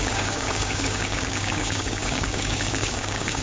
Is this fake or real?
fake